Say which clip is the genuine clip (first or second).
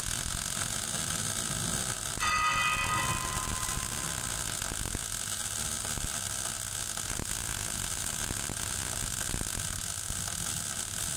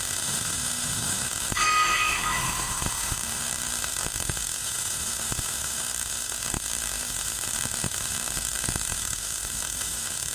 first